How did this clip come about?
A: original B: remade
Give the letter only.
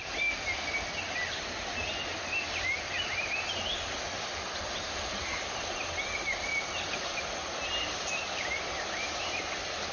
A